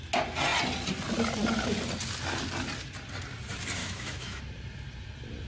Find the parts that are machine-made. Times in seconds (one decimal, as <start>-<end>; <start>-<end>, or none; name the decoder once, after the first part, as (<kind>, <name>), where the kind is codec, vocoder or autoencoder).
3.8-4.4 (autoencoder, DAC-VAE)